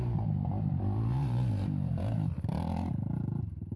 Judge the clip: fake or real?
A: fake